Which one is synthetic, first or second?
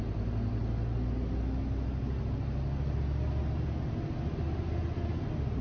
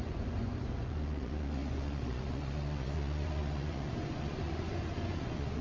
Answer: second